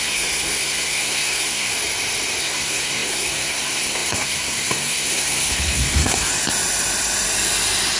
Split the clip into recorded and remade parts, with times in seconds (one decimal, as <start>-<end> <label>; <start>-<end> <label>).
0.0-1.7 remade; 1.7-2.4 recorded; 2.4-6.3 remade; 6.3-8.0 recorded